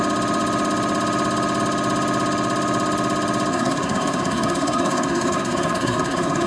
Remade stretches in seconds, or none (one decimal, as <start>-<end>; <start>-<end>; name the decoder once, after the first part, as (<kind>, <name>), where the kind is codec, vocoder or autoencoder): 3.5-6.5 (codec, SNAC)